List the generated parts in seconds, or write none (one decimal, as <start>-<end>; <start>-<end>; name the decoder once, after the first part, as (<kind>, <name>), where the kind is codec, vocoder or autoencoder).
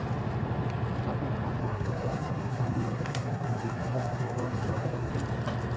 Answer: 1.6-5.1 (codec, SNAC)